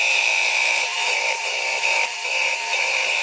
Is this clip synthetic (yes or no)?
yes